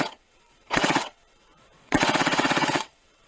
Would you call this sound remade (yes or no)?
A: yes